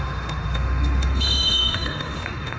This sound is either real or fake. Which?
fake